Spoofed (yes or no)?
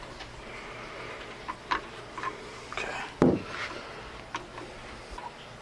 no